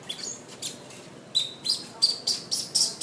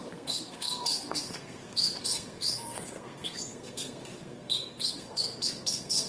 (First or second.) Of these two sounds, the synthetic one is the second